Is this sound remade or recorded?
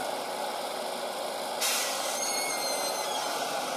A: recorded